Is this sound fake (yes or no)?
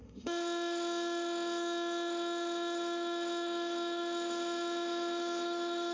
yes